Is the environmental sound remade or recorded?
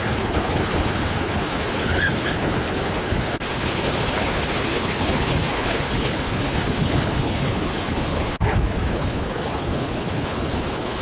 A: remade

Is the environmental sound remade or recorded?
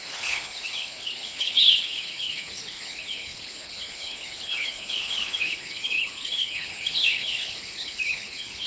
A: remade